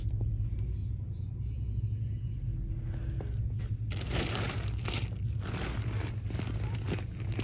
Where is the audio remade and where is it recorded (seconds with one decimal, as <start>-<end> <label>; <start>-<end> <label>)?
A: 0.0-0.8 recorded; 0.8-1.8 remade; 1.8-7.4 recorded